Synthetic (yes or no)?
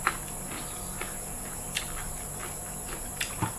no